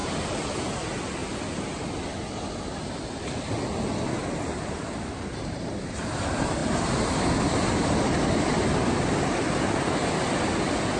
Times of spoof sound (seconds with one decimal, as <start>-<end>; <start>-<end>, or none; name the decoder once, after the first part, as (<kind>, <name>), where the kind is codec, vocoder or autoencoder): 0.0-0.5 (vocoder, BigVGAN v2); 6.6-8.7